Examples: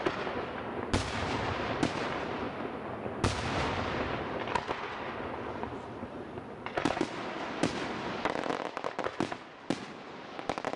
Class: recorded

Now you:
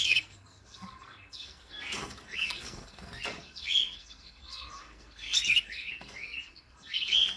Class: remade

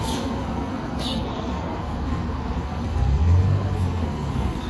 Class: remade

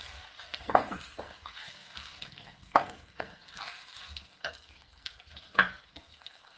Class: remade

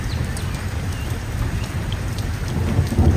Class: recorded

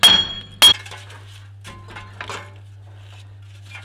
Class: recorded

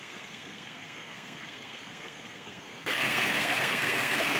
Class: remade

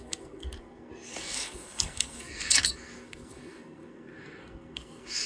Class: remade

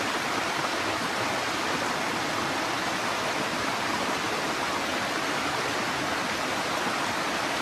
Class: recorded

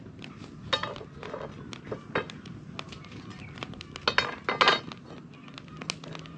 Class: recorded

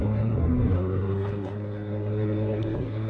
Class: remade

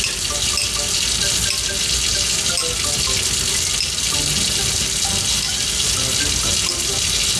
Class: recorded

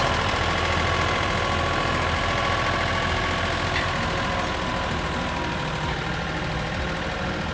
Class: recorded